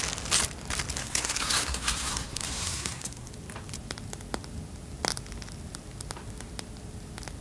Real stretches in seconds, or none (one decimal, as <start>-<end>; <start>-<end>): 0.0-1.0; 3.3-7.4